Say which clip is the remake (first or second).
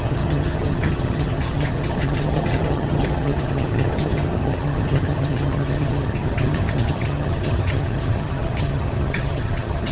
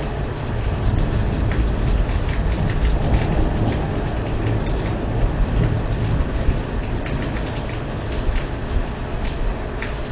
first